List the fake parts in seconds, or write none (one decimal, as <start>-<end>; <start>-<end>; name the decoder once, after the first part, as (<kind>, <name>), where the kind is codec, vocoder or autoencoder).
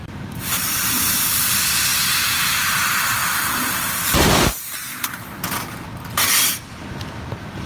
0.0-1.9 (vocoder, BigVGAN v2); 2.4-3.2; 3.9-5.9; 6.8-7.7